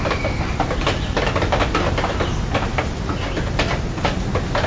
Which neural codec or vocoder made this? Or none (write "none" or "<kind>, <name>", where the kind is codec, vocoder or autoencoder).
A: none